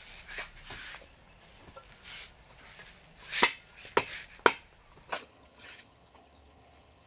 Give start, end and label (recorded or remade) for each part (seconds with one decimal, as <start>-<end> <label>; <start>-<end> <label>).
0.0-5.1 recorded; 5.1-7.1 remade